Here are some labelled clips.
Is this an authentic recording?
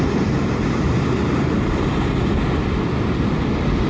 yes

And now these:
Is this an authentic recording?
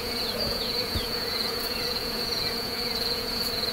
no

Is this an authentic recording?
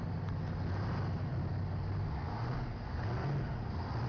yes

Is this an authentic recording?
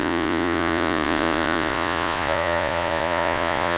no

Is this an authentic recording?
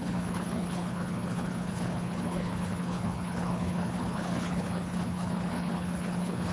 no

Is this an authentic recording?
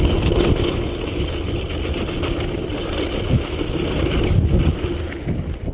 yes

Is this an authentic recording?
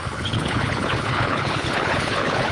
no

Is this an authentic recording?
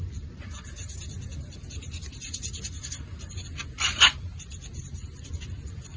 yes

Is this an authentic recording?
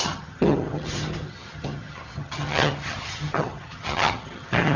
no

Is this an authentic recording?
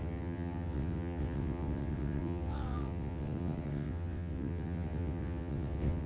no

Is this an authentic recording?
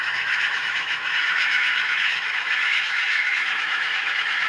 no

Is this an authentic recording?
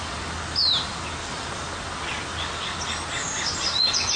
yes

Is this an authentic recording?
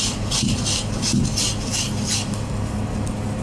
yes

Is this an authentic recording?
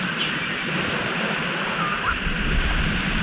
yes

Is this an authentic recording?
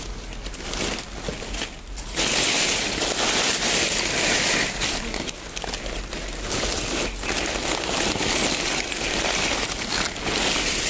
yes